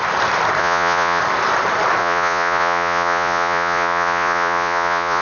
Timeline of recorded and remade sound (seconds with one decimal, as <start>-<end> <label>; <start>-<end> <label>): 0.0-0.6 recorded; 0.6-1.2 remade; 1.2-2.0 recorded; 2.0-5.2 remade